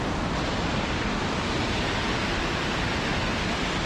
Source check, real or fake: real